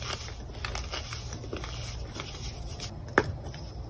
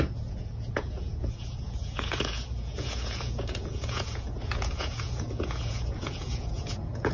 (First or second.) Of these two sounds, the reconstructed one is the second